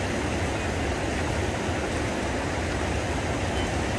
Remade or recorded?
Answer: recorded